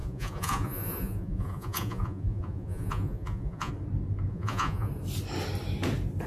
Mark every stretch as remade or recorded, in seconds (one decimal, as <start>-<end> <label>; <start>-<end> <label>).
0.0-3.7 remade; 3.7-4.3 recorded; 4.3-4.9 remade; 4.9-6.3 recorded